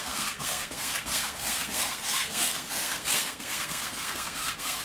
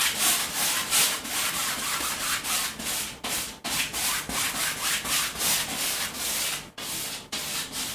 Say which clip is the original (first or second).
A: second